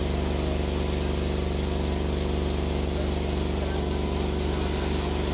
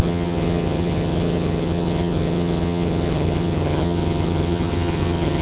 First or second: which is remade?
second